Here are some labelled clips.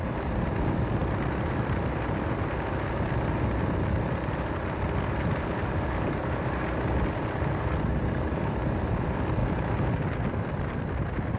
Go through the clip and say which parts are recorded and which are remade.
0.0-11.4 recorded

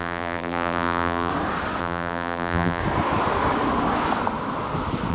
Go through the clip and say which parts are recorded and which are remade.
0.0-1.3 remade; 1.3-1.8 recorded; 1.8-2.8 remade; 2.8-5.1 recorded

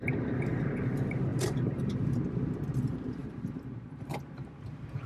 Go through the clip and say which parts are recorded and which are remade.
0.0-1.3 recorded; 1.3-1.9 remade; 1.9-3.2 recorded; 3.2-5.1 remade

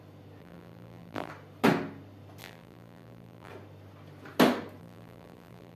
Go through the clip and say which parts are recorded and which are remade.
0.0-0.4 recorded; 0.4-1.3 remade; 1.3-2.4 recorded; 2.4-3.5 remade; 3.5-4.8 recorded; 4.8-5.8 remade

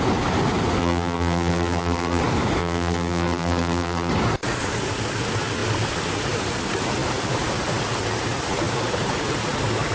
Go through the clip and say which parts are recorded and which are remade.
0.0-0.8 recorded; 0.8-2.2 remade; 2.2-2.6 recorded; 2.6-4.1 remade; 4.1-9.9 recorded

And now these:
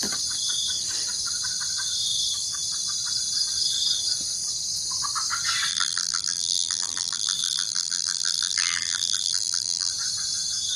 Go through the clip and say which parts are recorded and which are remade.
0.0-5.7 recorded; 5.7-9.9 remade; 9.9-10.8 recorded